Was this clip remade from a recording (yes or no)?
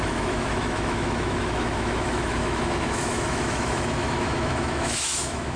yes